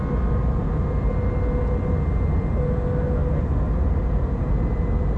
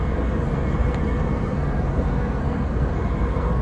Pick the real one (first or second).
first